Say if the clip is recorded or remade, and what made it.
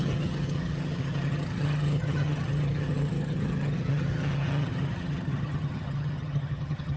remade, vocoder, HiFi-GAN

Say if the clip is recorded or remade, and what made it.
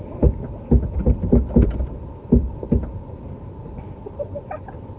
recorded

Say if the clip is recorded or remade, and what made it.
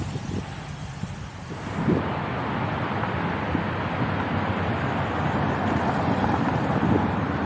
recorded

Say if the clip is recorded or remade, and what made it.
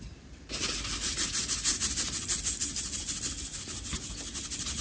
recorded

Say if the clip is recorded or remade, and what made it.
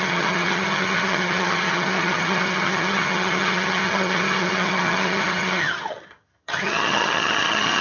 remade, vocoder, HiFi-GAN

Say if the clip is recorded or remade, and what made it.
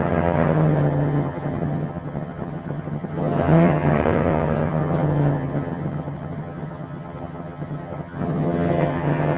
remade, vocoder, HiFi-GAN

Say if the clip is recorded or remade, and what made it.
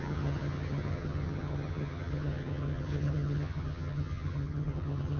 remade, vocoder, HiFi-GAN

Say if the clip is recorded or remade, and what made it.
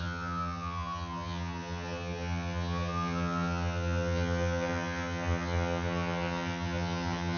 remade, vocoder, HiFi-GAN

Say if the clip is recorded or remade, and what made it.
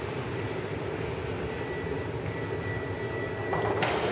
recorded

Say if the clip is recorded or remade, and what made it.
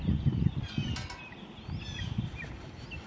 recorded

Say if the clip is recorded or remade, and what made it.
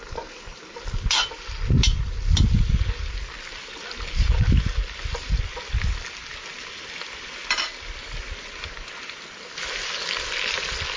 recorded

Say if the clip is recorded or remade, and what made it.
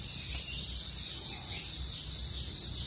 recorded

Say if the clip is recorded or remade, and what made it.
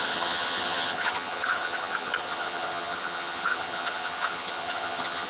remade, vocoder, HiFi-GAN